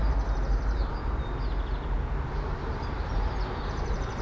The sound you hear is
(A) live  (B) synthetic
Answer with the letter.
A